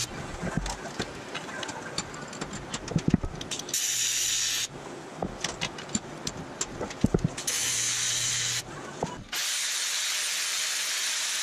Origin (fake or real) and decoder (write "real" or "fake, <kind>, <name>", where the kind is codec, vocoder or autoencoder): real